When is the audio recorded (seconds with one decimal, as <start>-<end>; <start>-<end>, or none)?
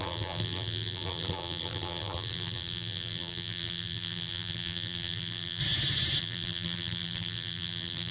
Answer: 5.6-6.2